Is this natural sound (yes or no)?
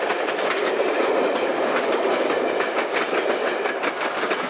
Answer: yes